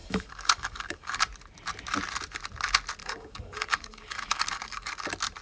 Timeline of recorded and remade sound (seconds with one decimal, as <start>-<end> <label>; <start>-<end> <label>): 0.0-1.2 remade; 1.2-3.0 recorded; 3.0-4.9 remade; 4.9-5.4 recorded